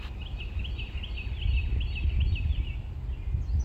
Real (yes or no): yes